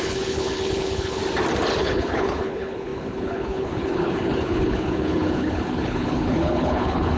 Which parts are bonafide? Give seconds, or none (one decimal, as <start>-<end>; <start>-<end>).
1.2-1.8